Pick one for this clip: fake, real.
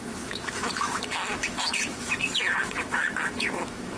fake